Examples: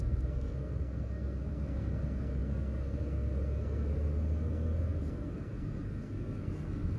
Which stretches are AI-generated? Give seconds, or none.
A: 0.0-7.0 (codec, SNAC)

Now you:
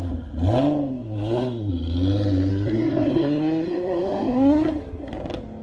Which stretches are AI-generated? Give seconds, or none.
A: 0.9-1.7 (codec, SNAC); 2.5-5.1